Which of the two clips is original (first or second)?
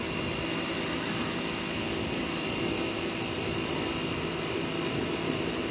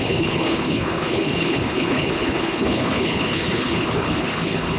first